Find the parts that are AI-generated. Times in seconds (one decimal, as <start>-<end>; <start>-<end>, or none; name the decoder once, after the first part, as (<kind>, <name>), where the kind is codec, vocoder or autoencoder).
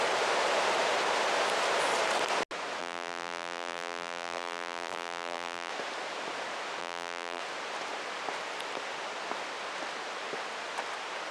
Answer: 2.8-5.7 (vocoder, BigVGAN v2); 6.8-7.4